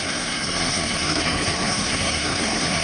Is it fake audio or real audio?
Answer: fake